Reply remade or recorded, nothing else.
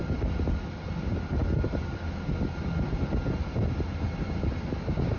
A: recorded